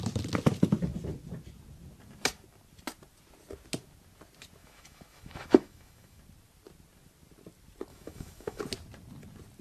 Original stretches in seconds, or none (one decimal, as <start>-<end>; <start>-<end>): 0.0-4.6; 6.2-7.9; 8.6-9.6